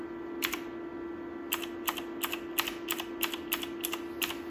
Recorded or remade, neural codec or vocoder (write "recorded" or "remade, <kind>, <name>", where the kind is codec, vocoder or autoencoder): recorded